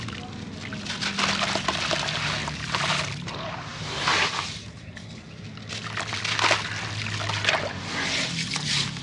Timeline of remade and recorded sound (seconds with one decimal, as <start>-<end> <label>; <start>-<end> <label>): 0.0-2.4 recorded; 2.4-3.0 remade; 3.0-3.7 recorded; 3.7-4.9 remade; 4.9-9.0 recorded